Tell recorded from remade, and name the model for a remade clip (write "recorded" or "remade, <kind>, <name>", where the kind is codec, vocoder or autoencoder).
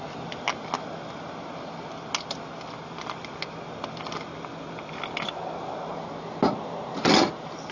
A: recorded